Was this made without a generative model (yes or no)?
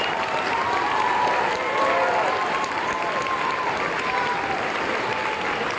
yes